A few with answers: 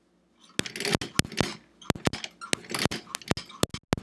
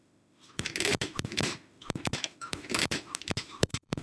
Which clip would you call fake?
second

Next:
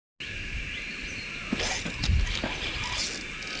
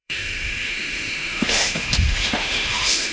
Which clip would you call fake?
second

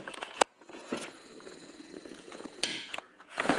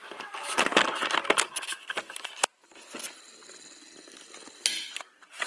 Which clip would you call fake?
first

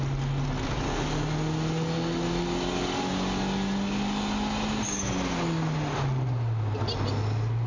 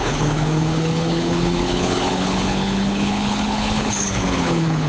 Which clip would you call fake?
second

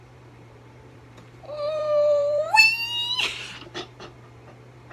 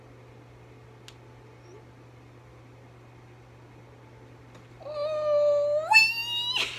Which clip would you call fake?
first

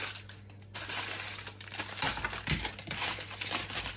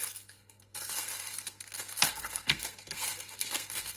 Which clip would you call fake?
second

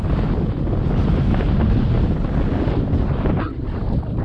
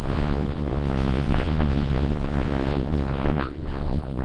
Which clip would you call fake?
second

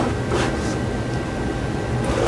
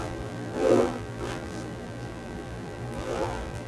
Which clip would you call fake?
second